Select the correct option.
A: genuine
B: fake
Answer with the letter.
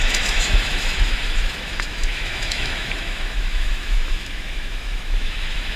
B